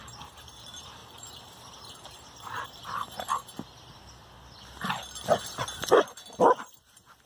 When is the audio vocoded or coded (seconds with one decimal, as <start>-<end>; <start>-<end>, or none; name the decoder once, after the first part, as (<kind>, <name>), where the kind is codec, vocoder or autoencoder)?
none